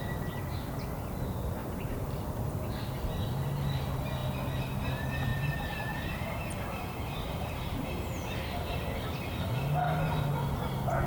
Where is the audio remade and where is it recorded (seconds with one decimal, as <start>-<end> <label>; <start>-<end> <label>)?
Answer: 0.0-1.6 recorded; 1.6-2.1 remade; 2.1-5.3 recorded; 5.3-9.5 remade; 9.5-11.1 recorded